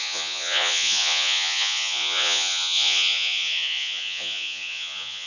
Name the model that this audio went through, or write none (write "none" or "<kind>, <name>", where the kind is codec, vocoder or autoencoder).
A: vocoder, Vocos